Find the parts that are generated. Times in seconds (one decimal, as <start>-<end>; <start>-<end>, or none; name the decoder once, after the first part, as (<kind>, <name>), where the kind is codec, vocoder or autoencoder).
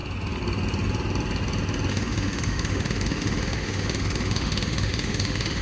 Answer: 1.9-5.6 (autoencoder, DAC-VAE)